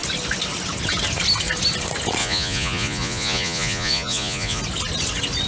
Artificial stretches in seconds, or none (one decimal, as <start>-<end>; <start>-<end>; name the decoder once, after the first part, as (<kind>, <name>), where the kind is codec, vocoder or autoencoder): 2.2-4.6 (vocoder, Vocos)